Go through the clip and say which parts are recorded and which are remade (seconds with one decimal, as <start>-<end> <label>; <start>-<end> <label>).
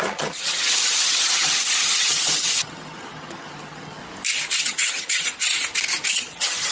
0.0-4.0 remade; 4.0-4.6 recorded; 4.6-5.5 remade; 5.5-6.1 recorded; 6.1-6.7 remade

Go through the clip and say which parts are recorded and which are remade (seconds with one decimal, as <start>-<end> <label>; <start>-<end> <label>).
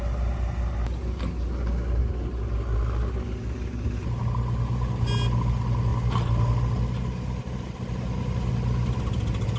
0.0-9.6 recorded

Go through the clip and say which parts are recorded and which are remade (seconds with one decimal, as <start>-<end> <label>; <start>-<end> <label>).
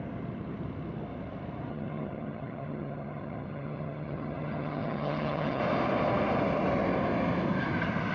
0.0-1.7 recorded; 1.7-5.6 remade; 5.6-8.1 recorded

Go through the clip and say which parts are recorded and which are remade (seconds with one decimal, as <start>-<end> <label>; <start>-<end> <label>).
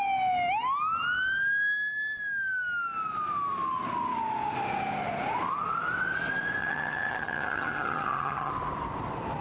0.0-6.6 recorded; 6.6-8.5 remade; 8.5-9.4 recorded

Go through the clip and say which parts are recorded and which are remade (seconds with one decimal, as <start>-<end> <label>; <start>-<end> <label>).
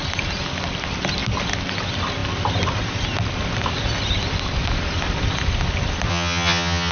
0.0-6.1 recorded; 6.1-6.9 remade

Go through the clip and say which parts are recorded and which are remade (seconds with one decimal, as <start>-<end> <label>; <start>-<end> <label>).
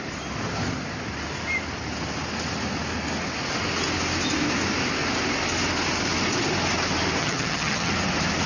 0.0-7.2 recorded; 7.2-7.9 remade; 7.9-8.5 recorded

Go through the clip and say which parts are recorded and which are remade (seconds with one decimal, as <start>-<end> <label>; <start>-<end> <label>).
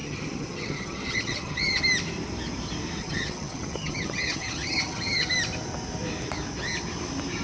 0.0-1.8 remade; 1.8-3.0 recorded; 3.0-5.3 remade; 5.3-7.4 recorded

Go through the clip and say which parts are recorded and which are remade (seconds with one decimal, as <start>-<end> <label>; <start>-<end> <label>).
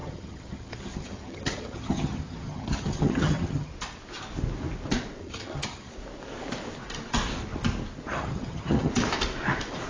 0.0-3.7 remade; 3.7-5.2 recorded; 5.2-5.9 remade; 5.9-8.1 recorded; 8.1-8.9 remade; 8.9-9.9 recorded